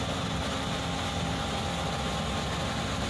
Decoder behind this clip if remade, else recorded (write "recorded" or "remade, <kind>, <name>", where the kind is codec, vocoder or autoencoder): recorded